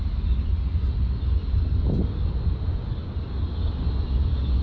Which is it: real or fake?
real